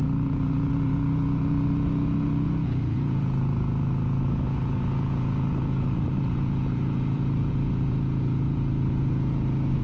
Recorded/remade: remade